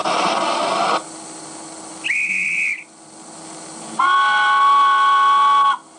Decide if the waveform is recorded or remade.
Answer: recorded